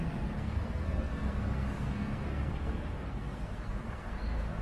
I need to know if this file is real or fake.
fake